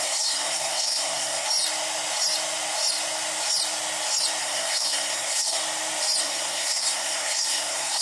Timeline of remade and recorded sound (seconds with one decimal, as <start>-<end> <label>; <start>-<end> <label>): 0.0-1.5 remade; 1.5-4.4 recorded; 4.4-5.6 remade; 5.6-6.2 recorded; 6.2-8.0 remade